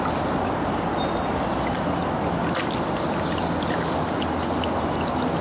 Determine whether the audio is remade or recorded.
recorded